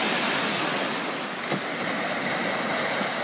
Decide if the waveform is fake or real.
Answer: real